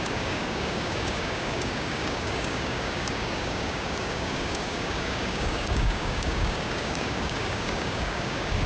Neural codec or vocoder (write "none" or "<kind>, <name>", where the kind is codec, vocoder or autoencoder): codec, DAC